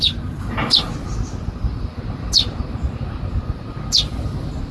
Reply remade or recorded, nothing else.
recorded